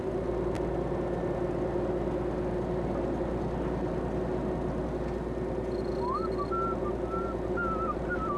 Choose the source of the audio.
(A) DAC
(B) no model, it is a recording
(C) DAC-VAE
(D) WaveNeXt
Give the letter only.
B